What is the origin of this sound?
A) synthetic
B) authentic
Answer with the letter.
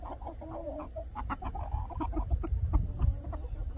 A